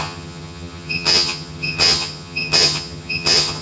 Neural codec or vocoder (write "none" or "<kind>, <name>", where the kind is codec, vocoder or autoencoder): vocoder, HiFi-GAN